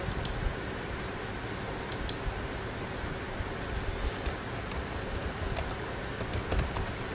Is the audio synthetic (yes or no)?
no